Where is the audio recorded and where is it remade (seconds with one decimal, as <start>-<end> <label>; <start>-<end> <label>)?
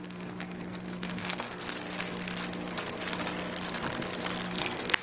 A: 0.0-1.6 remade; 1.6-4.6 recorded; 4.6-5.0 remade